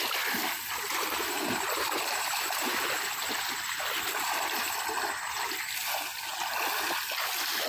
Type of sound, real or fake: real